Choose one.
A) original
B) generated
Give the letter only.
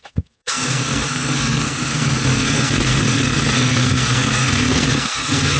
B